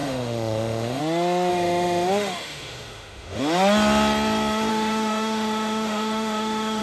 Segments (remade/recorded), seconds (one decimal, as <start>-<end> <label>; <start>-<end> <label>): 0.0-1.0 remade; 1.0-1.5 recorded; 1.5-3.4 remade; 3.4-4.7 recorded; 4.7-6.8 remade